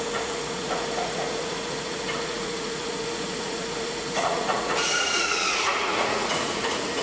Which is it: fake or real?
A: fake